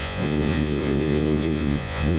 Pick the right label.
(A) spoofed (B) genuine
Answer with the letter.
A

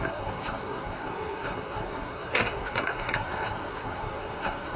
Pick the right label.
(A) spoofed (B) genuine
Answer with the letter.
A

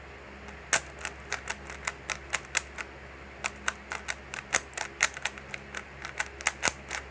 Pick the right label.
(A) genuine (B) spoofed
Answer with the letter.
A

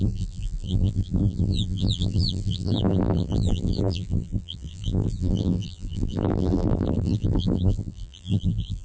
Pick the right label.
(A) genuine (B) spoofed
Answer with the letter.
B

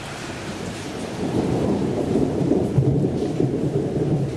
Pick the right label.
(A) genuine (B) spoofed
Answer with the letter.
B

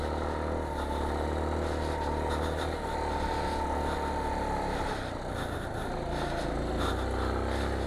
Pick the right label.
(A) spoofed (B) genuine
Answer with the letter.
B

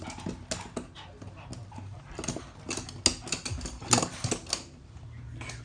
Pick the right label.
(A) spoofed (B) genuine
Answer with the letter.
B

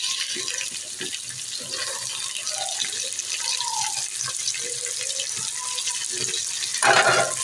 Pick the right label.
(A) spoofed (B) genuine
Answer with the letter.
B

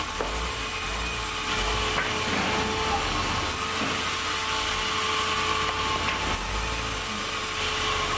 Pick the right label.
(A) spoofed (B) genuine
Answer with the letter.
B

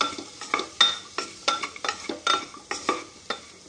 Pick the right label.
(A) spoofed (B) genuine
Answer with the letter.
B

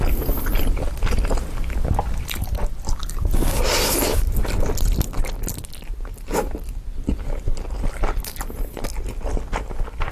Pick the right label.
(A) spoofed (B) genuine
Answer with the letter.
B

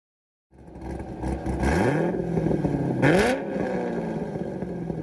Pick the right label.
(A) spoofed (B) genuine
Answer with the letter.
B